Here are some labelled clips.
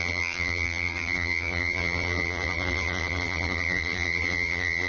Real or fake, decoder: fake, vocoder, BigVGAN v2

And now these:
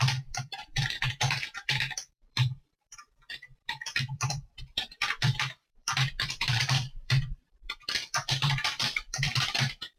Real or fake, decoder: fake, vocoder, BigVGAN v2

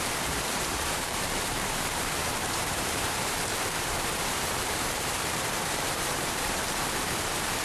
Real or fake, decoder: fake, vocoder, BigVGAN v2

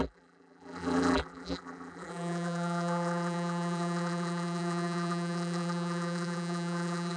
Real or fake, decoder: fake, vocoder, BigVGAN v2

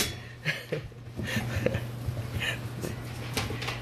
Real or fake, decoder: real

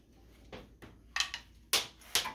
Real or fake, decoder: real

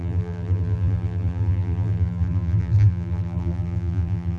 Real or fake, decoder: fake, vocoder, BigVGAN v2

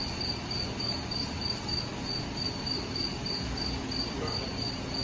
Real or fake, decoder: real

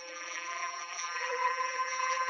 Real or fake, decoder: fake, vocoder, BigVGAN v2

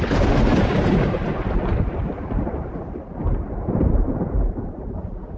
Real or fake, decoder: real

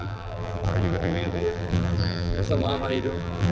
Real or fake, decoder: fake, vocoder, BigVGAN v2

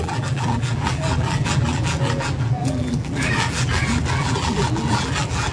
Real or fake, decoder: fake, vocoder, BigVGAN v2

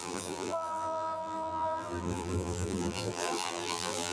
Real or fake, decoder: fake, vocoder, BigVGAN v2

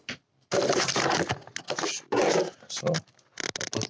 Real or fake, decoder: real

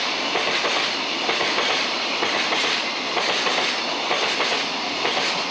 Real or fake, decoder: fake, vocoder, BigVGAN v2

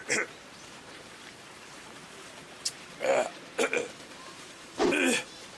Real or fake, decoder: fake, vocoder, BigVGAN v2